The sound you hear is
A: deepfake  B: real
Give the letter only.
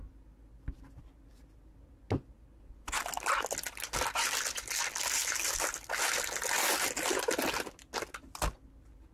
B